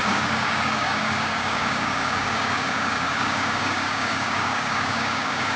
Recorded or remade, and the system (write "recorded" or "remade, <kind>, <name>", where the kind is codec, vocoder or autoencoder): remade, codec, DAC